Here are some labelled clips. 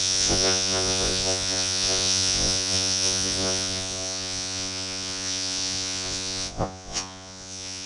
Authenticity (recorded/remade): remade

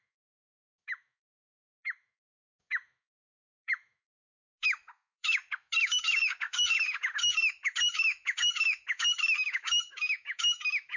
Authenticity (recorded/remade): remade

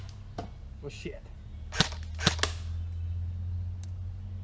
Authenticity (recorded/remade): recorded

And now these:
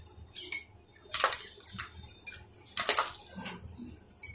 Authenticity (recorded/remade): recorded